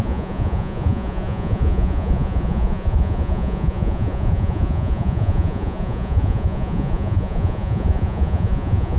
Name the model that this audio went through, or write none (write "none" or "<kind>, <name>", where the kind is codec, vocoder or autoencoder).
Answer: vocoder, Vocos